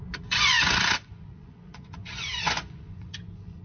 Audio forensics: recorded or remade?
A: remade